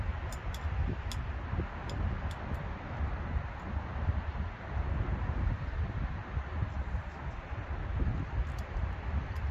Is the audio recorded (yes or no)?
yes